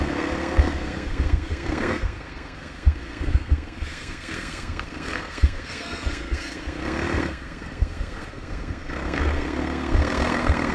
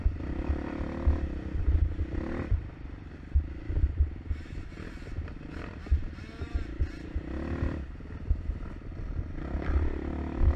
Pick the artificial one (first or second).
first